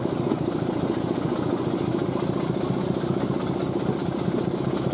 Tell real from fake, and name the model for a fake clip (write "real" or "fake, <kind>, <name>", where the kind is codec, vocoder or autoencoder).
real